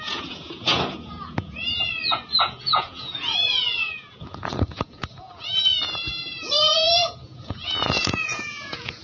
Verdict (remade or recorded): remade